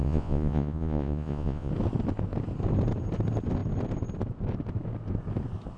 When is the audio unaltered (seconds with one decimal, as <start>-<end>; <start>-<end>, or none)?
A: 1.7-5.8